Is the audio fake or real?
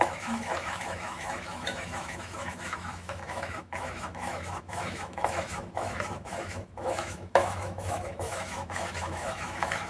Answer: fake